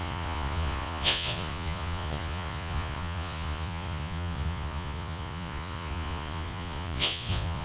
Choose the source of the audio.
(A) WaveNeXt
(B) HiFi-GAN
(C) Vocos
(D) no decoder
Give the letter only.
C